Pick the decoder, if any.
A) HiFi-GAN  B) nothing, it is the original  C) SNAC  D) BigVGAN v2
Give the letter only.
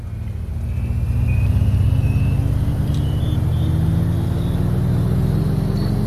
B